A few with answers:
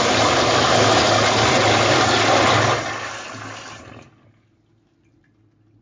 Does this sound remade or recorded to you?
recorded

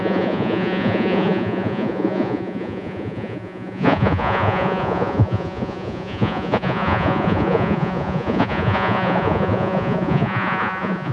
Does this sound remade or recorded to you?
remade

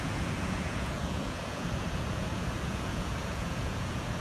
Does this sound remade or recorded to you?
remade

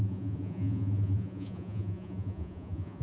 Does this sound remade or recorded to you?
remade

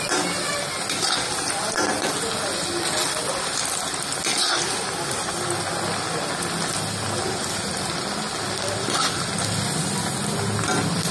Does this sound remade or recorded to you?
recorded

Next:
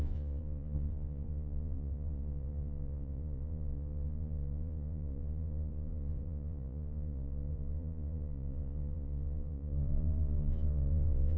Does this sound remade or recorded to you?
remade